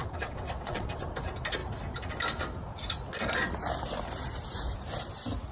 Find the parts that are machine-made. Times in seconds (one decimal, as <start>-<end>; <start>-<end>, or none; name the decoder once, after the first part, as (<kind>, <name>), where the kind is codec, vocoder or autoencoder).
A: 0.0-1.0 (vocoder, WaveNeXt)